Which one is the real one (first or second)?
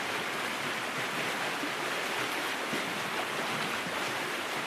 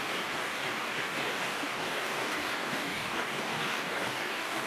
first